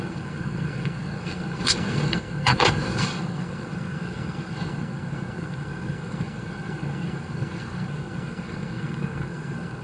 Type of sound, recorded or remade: remade